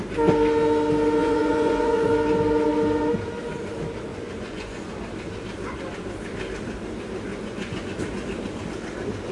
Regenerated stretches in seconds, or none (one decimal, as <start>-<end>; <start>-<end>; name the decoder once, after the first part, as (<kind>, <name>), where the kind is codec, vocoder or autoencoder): 1.2-2.1 (vocoder, Vocos); 4.1-4.9; 7.3-7.9